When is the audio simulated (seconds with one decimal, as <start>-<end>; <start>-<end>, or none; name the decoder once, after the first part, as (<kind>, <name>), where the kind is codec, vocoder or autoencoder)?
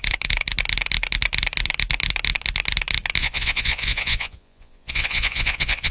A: 3.2-5.9 (vocoder, Vocos)